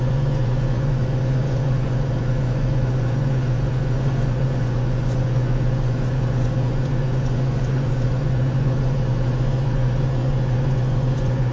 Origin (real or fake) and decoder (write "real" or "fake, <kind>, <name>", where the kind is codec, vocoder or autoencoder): fake, vocoder, Vocos